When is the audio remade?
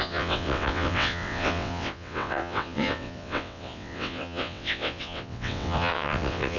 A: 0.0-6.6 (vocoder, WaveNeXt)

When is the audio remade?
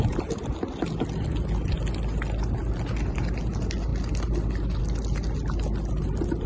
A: none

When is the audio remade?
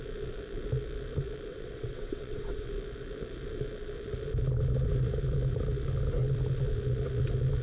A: 1.5-2.7 (vocoder, WaveNeXt)